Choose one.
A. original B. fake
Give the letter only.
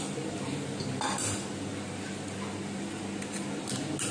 A